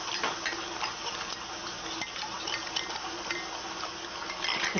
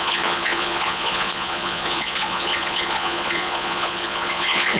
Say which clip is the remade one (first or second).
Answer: second